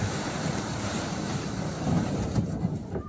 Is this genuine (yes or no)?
no